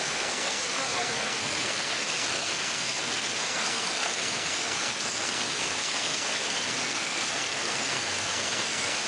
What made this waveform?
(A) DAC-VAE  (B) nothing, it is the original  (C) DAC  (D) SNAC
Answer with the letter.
D